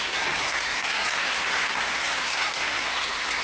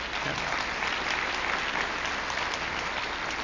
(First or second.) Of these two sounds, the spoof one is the first